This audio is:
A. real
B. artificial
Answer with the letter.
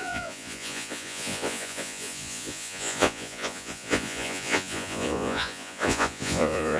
B